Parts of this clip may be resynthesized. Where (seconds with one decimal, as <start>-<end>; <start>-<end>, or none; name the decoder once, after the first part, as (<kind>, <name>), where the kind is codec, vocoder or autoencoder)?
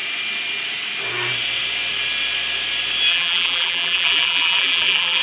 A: 3.1-5.2 (vocoder, BigVGAN v2)